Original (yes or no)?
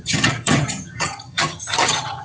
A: no